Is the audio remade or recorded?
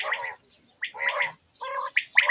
recorded